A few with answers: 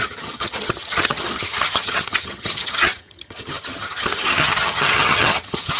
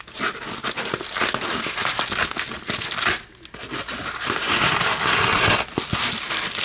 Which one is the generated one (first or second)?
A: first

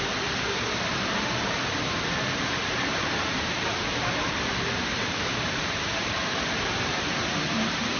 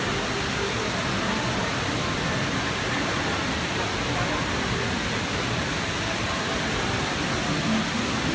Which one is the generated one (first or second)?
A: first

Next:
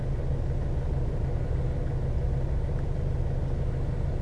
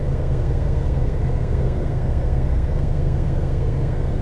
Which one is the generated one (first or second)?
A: second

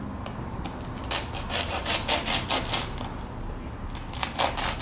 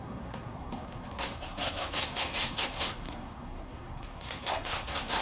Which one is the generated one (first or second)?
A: second